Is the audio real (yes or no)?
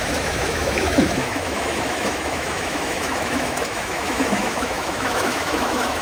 no